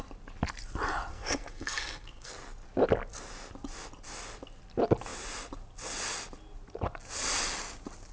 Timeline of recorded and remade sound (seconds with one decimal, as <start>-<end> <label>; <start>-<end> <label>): 0.0-1.1 recorded; 1.1-2.3 remade; 2.3-8.1 recorded

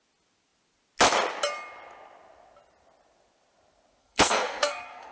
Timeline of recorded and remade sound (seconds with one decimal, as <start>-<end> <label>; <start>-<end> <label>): 0.0-4.0 recorded; 4.0-5.1 remade